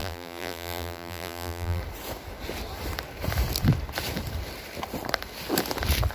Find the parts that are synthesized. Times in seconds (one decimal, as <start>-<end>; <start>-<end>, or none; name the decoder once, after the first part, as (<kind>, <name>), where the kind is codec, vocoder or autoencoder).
0.0-1.8 (vocoder, BigVGAN v2)